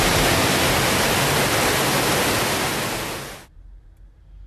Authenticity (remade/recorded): recorded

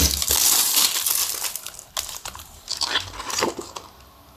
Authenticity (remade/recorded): recorded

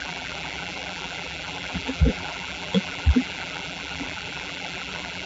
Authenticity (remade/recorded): remade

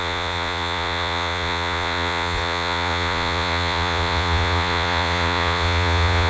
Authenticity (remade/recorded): remade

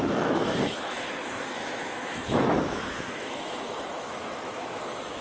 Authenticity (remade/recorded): remade